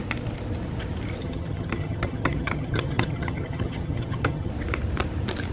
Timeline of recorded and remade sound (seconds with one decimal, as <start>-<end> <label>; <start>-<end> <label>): 0.0-1.2 recorded; 1.2-4.5 remade; 4.5-5.5 recorded